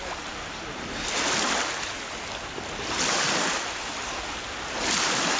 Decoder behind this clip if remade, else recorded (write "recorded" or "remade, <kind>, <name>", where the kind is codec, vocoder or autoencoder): recorded